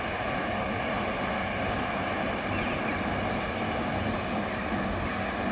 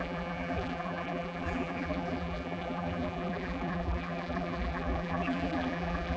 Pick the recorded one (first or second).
first